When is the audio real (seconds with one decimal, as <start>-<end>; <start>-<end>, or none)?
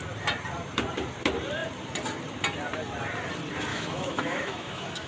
0.0-3.7